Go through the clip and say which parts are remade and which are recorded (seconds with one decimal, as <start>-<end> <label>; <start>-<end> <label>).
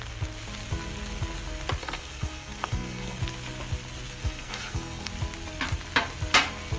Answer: 0.0-1.8 recorded; 1.8-3.2 remade; 3.2-4.2 recorded; 4.2-5.1 remade; 5.1-6.8 recorded